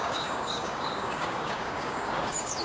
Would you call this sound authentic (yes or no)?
no